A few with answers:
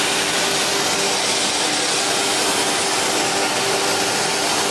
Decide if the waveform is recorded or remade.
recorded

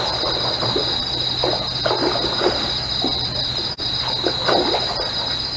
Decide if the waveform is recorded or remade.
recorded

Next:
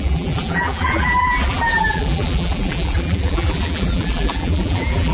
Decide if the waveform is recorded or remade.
remade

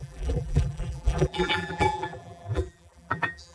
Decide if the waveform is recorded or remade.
remade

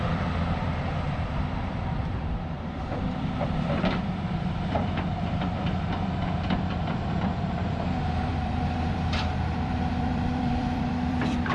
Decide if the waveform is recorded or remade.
remade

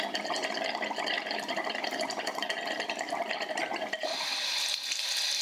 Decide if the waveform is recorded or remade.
remade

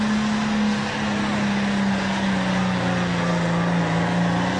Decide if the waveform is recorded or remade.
recorded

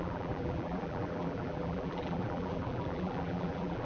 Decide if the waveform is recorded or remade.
remade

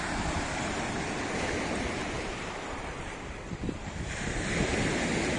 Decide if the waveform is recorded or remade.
remade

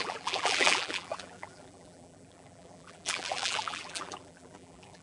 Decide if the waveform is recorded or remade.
remade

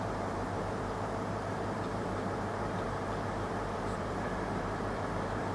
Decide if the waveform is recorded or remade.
remade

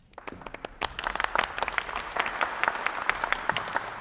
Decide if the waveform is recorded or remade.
recorded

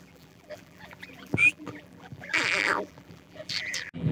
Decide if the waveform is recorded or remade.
remade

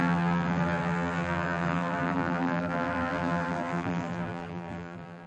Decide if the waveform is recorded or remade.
remade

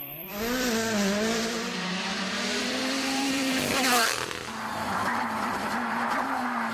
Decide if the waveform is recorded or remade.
remade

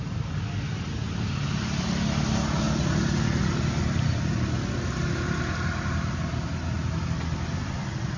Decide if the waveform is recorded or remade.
recorded